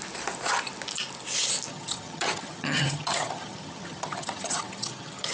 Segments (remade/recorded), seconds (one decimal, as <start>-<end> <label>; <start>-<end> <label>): 0.0-1.7 recorded; 1.7-5.3 remade